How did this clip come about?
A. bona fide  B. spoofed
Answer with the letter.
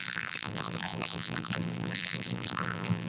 B